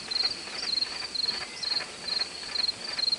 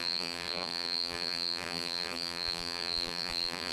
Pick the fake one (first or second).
second